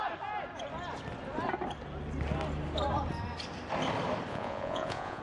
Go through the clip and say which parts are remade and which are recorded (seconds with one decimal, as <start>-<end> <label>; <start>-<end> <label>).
0.0-4.3 recorded; 4.3-5.2 remade